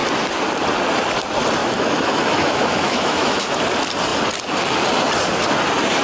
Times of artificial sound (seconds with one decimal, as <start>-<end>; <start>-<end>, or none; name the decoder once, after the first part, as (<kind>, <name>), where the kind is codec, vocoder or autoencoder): 1.6-3.5 (autoencoder, DAC-VAE)